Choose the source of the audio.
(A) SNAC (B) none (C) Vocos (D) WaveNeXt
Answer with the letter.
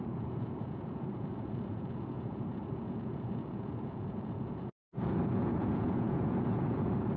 C